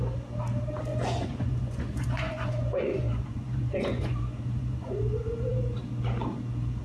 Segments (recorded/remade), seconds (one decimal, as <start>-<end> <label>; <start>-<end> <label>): 0.0-0.9 recorded; 0.9-5.0 remade; 5.0-6.8 recorded